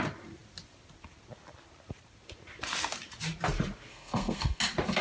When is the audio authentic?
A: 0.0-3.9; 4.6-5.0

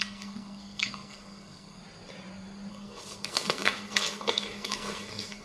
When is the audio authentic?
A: 1.8-2.7

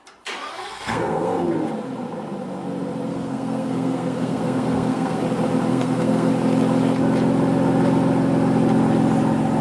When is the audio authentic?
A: 0.0-0.5; 1.5-3.1; 5.2-5.7; 6.3-9.6